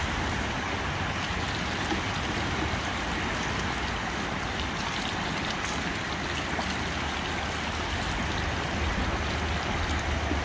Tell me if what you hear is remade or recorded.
recorded